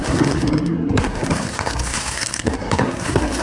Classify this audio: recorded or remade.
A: remade